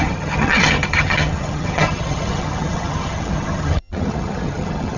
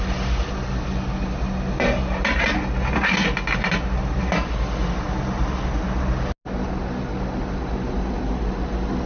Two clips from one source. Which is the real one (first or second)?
second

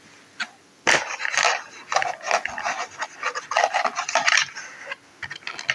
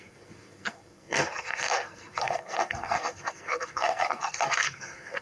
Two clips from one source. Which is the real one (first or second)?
first